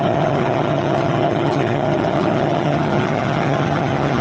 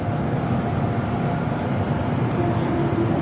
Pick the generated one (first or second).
first